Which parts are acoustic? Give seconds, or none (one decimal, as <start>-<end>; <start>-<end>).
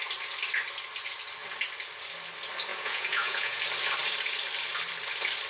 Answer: 0.0-2.7; 3.6-5.5